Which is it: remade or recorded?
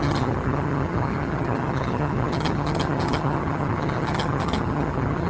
remade